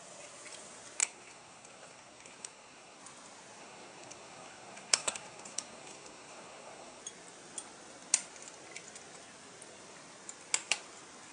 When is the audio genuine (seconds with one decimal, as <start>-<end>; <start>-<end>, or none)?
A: 0.0-1.0; 3.0-3.6; 7.0-11.3